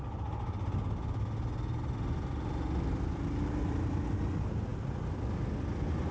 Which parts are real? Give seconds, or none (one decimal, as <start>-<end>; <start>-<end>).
0.0-6.1